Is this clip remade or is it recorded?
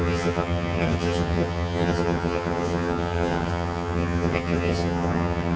remade